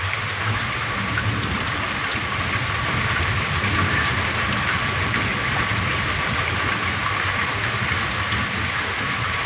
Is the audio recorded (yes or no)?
yes